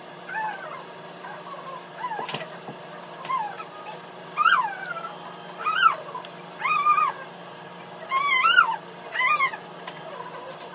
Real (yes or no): yes